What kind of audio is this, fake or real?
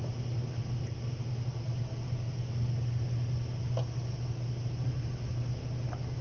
real